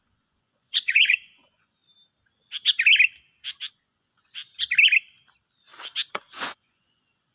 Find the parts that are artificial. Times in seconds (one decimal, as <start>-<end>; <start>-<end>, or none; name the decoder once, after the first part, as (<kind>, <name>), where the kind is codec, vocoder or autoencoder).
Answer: 0.0-1.8 (vocoder, Vocos); 3.7-4.4; 6.1-7.3